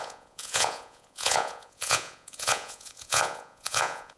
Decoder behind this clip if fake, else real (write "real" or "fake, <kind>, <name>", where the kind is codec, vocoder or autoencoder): fake, vocoder, Vocos